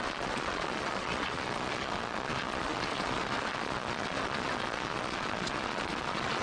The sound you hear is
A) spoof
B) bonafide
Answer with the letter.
A